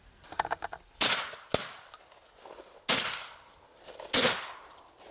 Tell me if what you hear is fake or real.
real